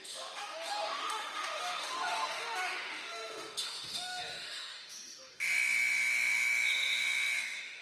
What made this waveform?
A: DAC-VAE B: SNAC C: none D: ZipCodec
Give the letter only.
A